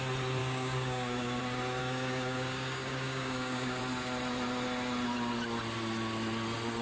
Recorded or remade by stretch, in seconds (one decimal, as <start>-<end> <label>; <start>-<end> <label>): 0.0-0.4 recorded; 0.4-1.4 remade; 1.4-1.8 recorded; 1.8-3.8 remade; 3.8-6.8 recorded